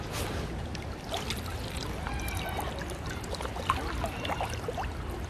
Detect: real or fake real